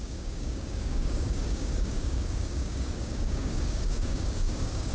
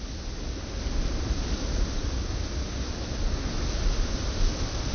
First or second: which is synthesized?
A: first